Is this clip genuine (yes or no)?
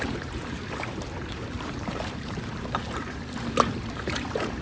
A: no